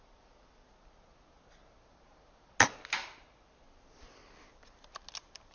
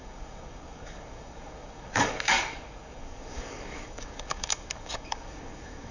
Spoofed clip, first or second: second